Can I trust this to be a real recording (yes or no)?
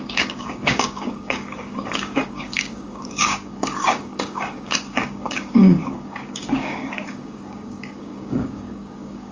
no